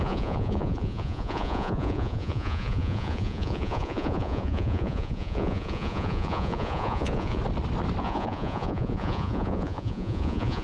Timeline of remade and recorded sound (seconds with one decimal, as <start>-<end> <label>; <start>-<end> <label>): 0.0-7.4 remade; 7.4-8.0 recorded; 8.0-10.6 remade